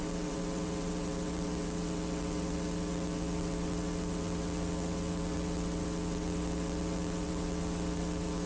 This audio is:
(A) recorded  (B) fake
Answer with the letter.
B